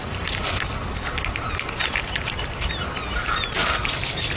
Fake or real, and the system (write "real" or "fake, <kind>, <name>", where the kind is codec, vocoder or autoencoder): real